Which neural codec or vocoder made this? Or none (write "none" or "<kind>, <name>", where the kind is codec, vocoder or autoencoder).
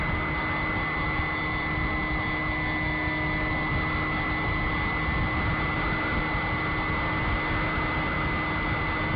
none